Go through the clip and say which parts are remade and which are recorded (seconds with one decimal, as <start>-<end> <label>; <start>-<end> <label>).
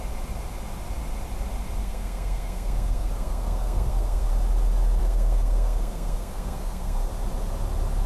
0.0-1.8 recorded; 1.8-4.3 remade; 4.3-5.0 recorded; 5.0-7.1 remade; 7.1-8.1 recorded